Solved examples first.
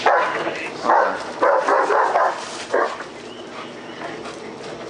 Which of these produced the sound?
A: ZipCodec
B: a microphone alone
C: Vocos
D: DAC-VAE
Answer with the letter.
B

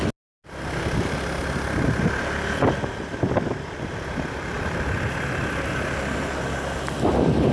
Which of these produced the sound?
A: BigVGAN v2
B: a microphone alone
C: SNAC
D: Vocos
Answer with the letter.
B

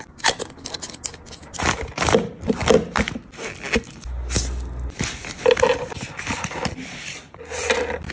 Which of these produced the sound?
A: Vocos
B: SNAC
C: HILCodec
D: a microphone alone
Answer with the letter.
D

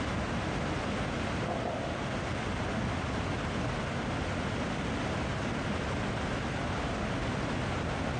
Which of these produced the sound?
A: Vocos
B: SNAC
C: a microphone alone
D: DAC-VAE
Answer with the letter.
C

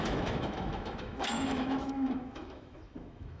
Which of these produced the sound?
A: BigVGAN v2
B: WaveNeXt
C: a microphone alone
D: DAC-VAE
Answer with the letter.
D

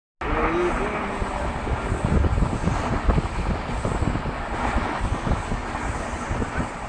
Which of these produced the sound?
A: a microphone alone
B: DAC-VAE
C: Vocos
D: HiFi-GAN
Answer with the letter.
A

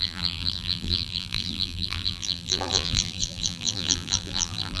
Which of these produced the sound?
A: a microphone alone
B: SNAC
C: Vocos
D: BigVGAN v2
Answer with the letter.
D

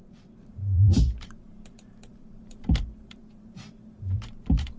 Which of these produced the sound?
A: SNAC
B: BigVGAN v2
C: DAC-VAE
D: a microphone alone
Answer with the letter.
B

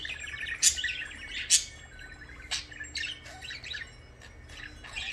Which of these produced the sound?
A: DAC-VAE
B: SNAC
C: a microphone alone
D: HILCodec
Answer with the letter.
C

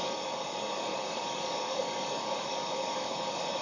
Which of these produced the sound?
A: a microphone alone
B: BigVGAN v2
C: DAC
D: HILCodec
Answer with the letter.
C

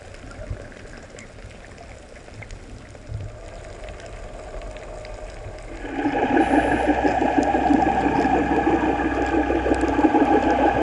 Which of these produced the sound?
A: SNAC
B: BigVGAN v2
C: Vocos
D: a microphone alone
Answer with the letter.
D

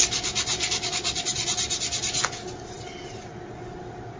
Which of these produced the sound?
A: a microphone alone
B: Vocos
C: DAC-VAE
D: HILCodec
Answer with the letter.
A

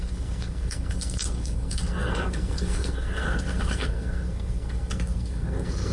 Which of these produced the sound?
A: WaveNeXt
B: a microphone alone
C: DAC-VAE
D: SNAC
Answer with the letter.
D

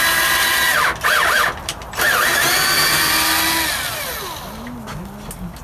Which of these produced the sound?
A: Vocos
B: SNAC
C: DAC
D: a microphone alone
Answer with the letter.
D